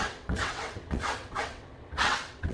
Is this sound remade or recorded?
remade